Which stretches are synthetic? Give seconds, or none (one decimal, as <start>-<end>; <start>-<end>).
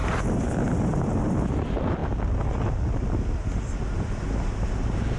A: none